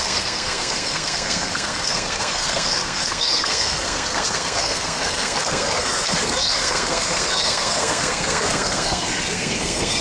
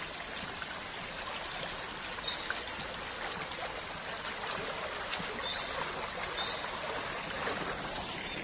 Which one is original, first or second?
second